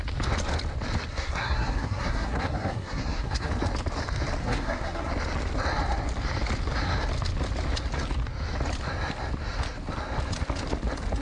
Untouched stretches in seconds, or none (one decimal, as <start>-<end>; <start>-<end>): 0.0-1.1; 3.5-4.4; 5.1-11.2